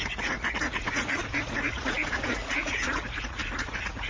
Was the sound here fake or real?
fake